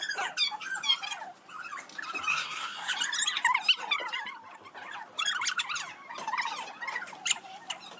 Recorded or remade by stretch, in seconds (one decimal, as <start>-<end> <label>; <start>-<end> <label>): 0.0-2.3 recorded; 2.3-2.9 remade; 2.9-8.0 recorded